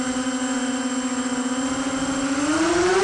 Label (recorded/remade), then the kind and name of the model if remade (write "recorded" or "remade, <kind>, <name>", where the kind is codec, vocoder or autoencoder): recorded